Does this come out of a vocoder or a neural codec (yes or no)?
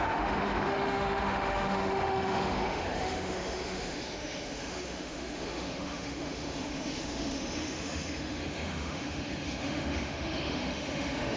yes